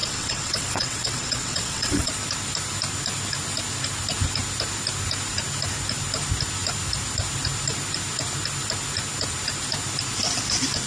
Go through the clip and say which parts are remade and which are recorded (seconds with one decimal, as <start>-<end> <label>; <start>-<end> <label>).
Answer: 0.0-2.1 remade; 2.1-10.9 recorded